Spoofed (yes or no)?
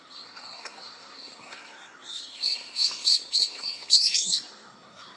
yes